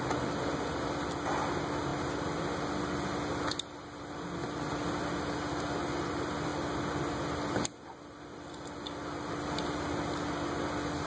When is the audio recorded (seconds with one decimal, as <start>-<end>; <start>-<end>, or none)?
0.0-11.1